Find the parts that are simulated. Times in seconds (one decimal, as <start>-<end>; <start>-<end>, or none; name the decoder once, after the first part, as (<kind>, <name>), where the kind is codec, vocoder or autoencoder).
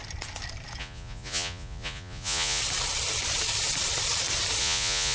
0.8-2.6 (vocoder, Vocos); 4.6-5.1